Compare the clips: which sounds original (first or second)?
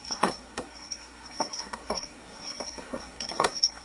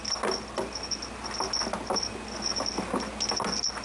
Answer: second